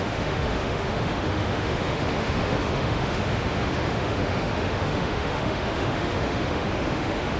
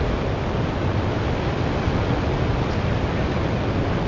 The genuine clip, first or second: second